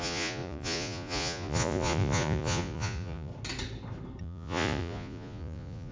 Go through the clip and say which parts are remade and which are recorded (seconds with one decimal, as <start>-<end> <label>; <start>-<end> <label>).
0.0-3.3 remade; 3.3-4.2 recorded; 4.2-5.9 remade